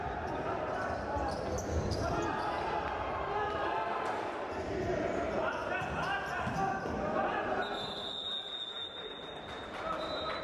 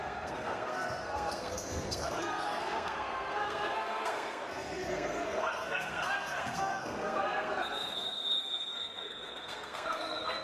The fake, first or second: second